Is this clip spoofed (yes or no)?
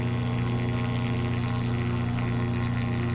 no